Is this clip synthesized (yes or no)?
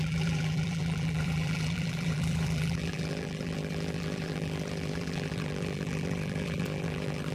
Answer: yes